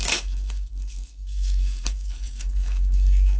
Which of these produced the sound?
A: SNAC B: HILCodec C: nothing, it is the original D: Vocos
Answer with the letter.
A